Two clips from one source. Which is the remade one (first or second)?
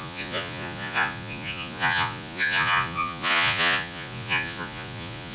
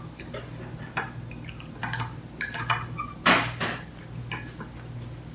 first